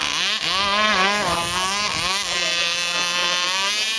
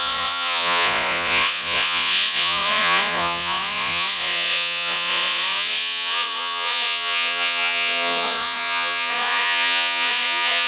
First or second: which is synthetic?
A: second